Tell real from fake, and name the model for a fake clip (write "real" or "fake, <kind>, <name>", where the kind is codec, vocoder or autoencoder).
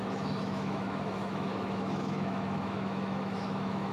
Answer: fake, autoencoder, DAC-VAE